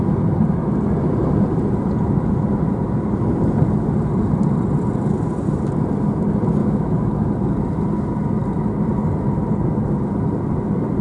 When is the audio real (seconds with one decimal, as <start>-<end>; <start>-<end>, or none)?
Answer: 0.0-6.6; 7.3-11.0